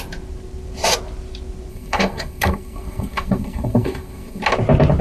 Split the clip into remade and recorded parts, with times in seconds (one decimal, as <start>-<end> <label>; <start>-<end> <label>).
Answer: 0.0-1.7 recorded; 1.7-4.4 remade; 4.4-5.0 recorded